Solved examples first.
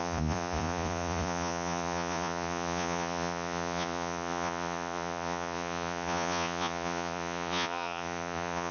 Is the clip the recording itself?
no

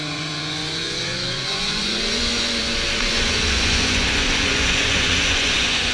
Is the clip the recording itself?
no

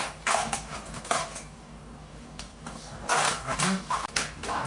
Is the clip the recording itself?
no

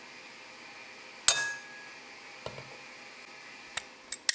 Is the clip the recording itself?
yes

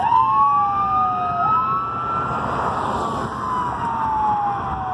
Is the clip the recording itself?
yes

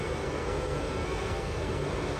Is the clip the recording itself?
no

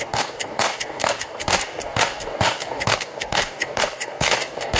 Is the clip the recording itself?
no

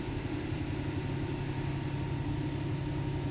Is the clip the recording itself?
yes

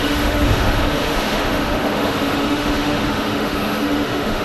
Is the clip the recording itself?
no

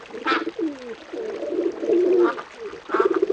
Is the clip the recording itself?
yes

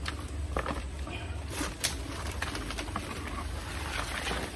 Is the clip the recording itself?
yes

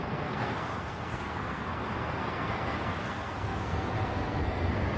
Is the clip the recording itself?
no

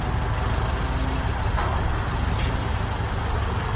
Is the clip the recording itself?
yes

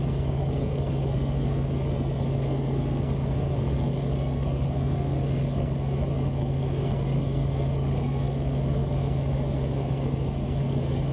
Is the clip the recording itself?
no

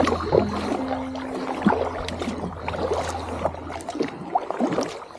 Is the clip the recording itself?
yes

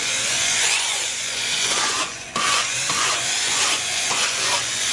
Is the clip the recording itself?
no